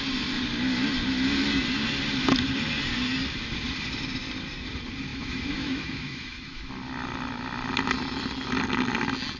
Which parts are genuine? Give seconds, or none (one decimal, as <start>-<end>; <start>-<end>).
0.0-5.1; 6.7-9.4